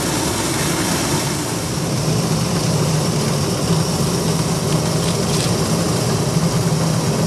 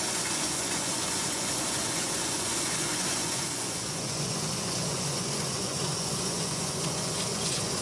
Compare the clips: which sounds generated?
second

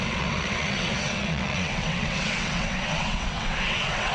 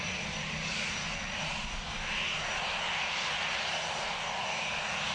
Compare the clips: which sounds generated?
first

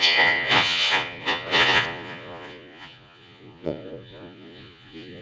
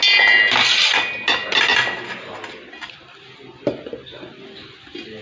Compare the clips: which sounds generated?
first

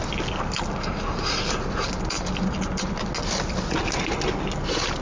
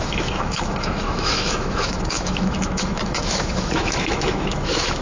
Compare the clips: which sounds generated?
second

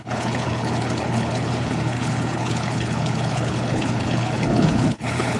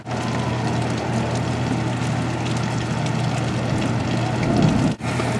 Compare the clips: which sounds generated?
first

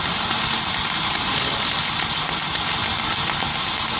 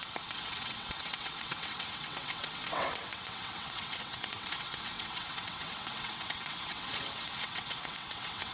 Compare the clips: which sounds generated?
second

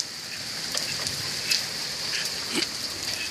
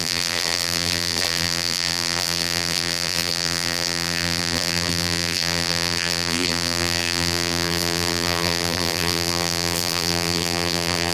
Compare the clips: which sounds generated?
second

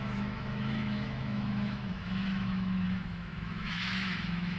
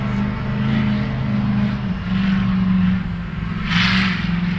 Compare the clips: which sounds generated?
first